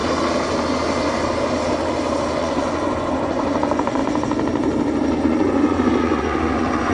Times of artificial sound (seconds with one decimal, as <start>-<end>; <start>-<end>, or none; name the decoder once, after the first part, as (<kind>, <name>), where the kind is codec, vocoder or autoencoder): 2.4-4.0 (vocoder, Vocos); 5.2-6.9